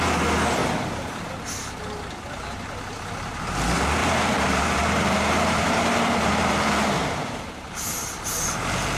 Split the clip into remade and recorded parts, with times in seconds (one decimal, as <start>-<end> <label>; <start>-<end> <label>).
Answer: 0.0-0.6 recorded; 0.6-1.3 remade; 1.3-4.0 recorded; 4.0-8.0 remade; 8.0-9.0 recorded